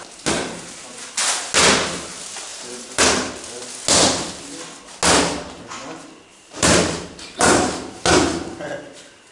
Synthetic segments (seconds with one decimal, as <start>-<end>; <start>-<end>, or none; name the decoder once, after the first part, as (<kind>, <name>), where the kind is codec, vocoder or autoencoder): 2.5-3.3 (vocoder, BigVGAN v2); 6.3-7.7